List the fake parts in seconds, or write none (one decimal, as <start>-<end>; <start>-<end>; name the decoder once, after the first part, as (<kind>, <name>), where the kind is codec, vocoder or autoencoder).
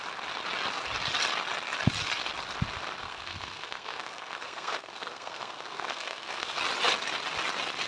3.0-6.6 (codec, SNAC)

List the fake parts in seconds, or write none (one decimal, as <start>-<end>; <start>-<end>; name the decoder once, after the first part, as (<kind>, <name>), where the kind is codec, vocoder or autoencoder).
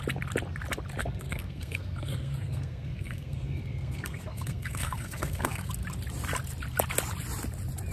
1.0-5.7 (codec, SNAC)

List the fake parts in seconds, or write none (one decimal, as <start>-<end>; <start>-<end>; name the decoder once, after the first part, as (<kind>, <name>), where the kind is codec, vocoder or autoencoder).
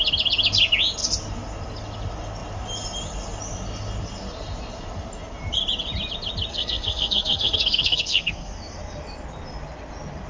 6.5-8.5 (codec, SNAC)